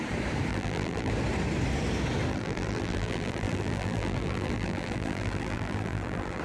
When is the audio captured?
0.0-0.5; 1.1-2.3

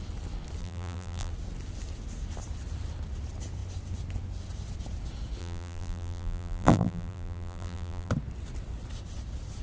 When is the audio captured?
0.0-0.6; 1.3-5.4; 8.1-9.6

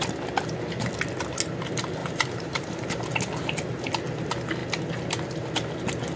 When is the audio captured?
0.0-2.0; 3.1-6.2

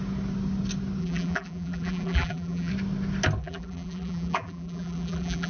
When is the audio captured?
0.0-1.0; 2.7-3.4

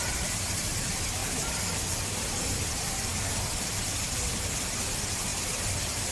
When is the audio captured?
1.2-2.4; 3.1-3.7

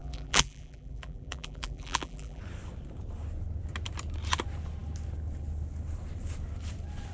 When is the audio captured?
2.4-7.1

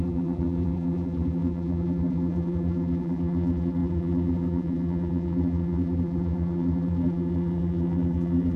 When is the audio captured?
none

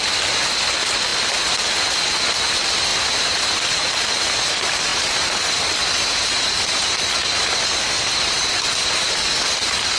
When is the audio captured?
0.0-2.9; 3.7-4.9; 9.1-10.0